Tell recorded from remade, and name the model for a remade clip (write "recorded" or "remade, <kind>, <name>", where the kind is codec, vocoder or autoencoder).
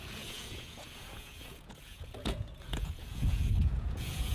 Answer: remade, vocoder, Vocos